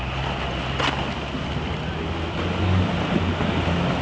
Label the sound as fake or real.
real